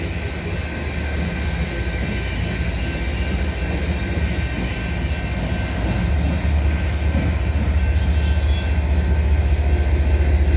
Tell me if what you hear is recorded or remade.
recorded